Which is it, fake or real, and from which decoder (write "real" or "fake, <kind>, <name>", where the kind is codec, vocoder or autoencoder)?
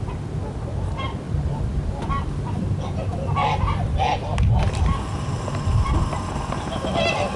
real